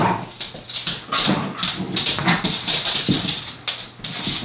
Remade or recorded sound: recorded